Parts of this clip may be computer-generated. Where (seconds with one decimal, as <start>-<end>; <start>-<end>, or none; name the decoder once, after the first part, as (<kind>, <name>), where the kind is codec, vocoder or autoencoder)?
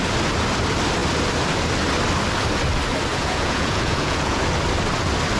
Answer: 3.1-4.4 (vocoder, Vocos)